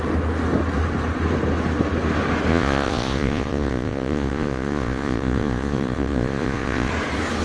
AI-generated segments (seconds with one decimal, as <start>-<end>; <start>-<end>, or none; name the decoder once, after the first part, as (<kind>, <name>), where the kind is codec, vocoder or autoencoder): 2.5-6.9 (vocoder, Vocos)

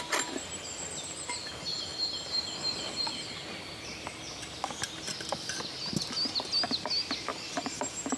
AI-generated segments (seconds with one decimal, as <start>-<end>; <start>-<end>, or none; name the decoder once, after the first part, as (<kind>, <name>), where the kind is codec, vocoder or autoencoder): none

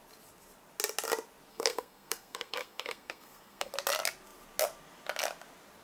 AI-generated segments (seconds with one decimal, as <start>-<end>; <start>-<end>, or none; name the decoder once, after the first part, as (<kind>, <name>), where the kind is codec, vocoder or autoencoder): 1.5-3.7 (codec, SNAC)